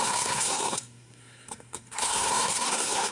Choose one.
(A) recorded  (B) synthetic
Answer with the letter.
B